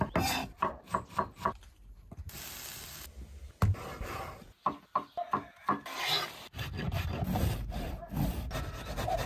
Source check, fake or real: real